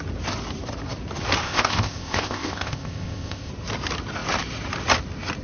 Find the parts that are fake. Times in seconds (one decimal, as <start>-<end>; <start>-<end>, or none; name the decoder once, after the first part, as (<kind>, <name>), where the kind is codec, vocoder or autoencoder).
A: 1.4-3.5 (codec, ZipCodec)